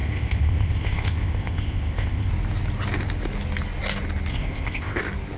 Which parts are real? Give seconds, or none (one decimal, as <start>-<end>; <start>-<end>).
2.3-4.3; 5.0-5.4